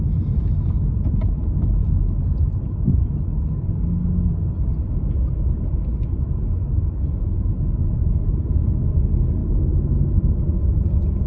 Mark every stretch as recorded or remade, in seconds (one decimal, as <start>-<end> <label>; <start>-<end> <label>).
0.0-9.4 recorded; 9.4-10.3 remade; 10.3-11.3 recorded